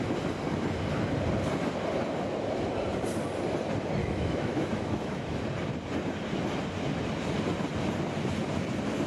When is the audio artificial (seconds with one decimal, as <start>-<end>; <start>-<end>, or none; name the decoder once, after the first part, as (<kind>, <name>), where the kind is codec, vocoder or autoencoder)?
4.0-5.4 (autoencoder, DAC-VAE)